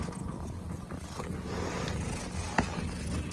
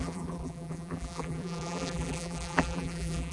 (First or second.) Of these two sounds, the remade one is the second